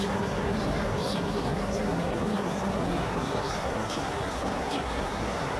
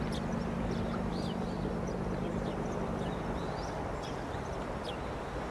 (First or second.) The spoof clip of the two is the first